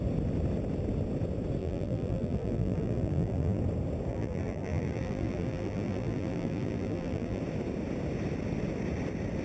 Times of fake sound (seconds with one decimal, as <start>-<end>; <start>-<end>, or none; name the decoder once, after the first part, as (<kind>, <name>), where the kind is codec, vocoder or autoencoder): 1.6-3.6 (vocoder, BigVGAN v2); 4.1-7.4